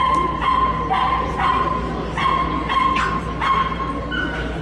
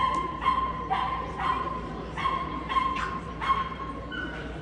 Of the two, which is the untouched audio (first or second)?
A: first